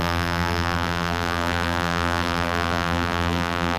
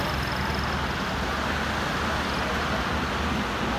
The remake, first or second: first